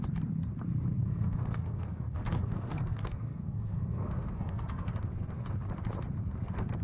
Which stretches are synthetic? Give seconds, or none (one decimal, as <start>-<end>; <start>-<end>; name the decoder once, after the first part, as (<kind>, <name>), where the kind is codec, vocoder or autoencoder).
1.0-4.9 (codec, SNAC)